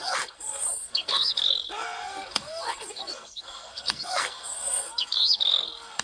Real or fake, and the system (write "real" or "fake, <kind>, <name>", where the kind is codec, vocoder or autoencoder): fake, codec, SNAC